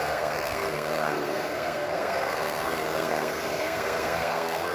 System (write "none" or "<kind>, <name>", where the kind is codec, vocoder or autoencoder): codec, SNAC